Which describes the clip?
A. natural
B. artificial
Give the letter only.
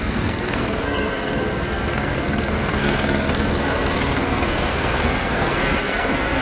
B